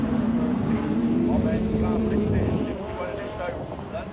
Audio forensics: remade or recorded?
remade